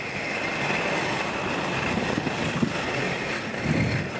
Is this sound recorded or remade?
recorded